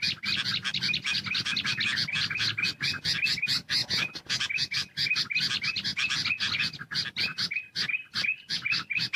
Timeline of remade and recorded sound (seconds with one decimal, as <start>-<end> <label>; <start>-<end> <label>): 0.0-7.3 recorded; 7.3-9.2 remade